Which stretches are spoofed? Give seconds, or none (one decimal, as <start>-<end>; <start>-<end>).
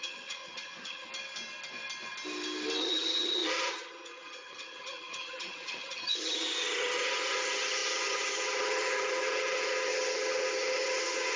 0.0-1.1; 2.8-11.4